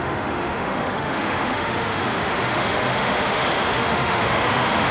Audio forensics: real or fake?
fake